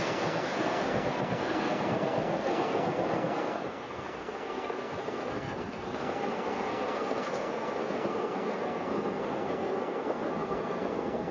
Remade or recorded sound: remade